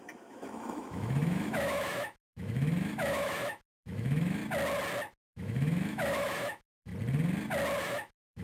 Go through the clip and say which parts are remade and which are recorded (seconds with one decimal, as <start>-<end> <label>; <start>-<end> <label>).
0.0-4.4 remade; 4.4-5.3 recorded; 5.3-6.9 remade; 6.9-7.8 recorded; 7.8-8.4 remade